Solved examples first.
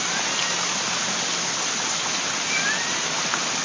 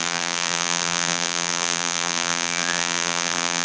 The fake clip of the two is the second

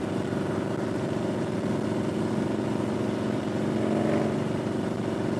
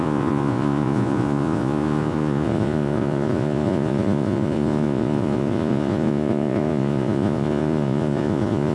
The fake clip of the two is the second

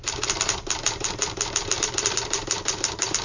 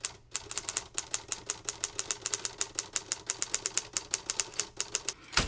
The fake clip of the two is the first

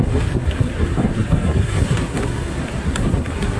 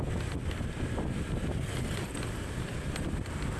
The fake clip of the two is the first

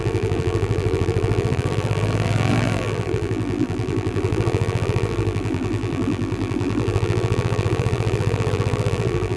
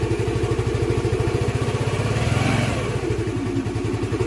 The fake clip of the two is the first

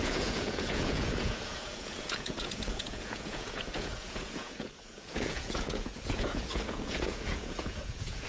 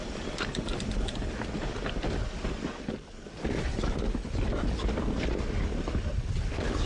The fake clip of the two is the first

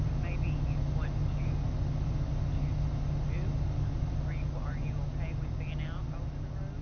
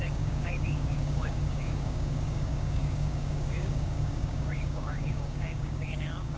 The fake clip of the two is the second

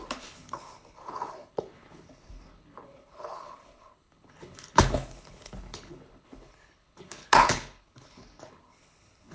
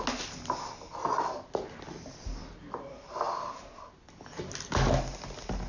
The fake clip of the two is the first